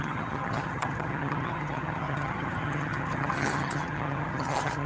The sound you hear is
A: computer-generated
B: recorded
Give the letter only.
A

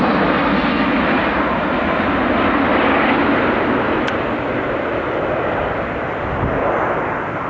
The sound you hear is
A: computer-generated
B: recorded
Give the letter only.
B